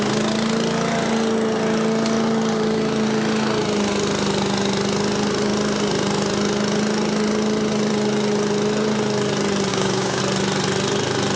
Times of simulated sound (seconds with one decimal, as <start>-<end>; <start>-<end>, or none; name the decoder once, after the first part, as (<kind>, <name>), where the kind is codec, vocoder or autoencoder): 9.7-10.2 (codec, DAC)